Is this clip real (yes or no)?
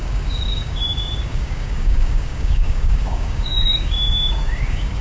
no